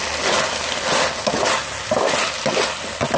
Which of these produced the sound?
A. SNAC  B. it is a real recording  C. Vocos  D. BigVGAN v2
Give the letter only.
B